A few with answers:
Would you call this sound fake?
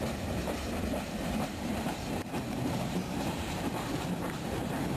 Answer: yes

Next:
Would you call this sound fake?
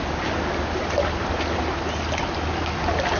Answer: no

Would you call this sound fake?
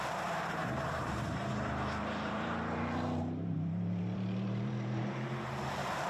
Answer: yes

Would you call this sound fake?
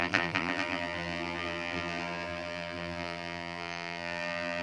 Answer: yes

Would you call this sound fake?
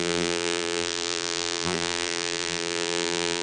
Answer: yes